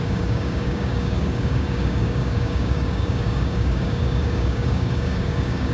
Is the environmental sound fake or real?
fake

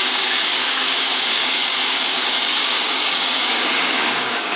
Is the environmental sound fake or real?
fake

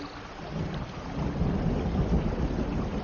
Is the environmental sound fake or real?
real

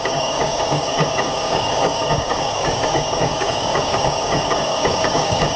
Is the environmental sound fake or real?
fake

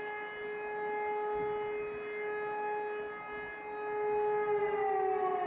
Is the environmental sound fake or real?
real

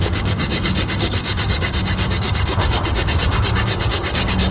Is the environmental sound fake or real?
fake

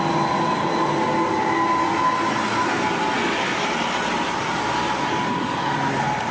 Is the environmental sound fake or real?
real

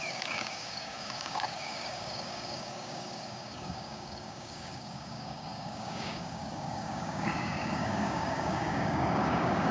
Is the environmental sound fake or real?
fake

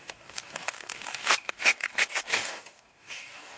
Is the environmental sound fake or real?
fake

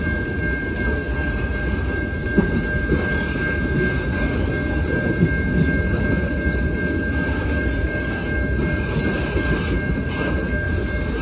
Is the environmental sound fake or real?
real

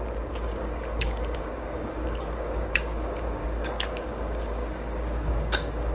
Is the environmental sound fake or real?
fake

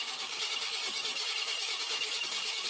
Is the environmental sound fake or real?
fake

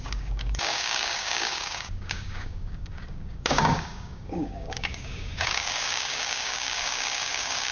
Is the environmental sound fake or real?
fake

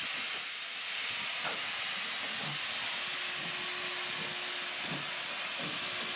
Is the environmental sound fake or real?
real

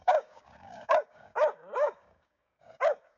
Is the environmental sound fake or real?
fake